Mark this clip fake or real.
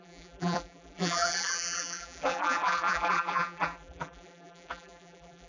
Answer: fake